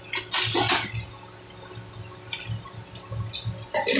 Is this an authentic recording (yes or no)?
yes